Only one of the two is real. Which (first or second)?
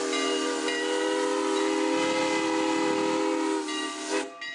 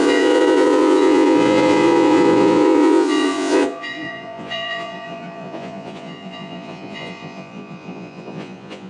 first